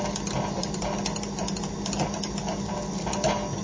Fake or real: real